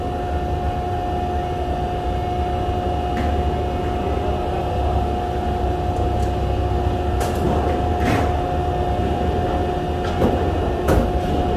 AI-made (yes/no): no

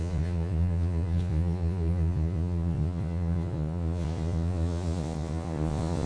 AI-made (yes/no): yes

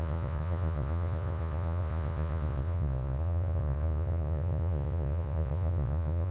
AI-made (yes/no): yes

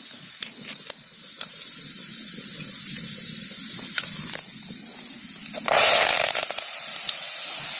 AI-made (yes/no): no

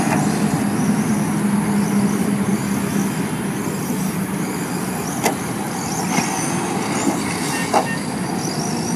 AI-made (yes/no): no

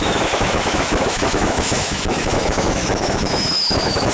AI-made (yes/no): yes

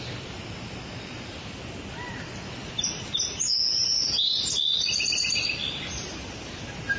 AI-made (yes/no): no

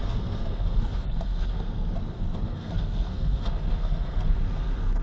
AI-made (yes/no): yes